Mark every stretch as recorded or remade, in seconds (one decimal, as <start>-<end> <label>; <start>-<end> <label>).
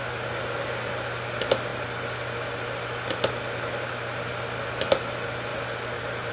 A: 0.0-1.7 recorded; 1.7-2.6 remade; 2.6-6.3 recorded